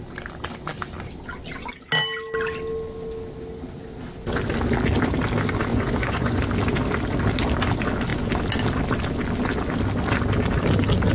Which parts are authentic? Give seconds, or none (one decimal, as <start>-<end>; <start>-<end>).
0.0-5.7; 6.4-11.1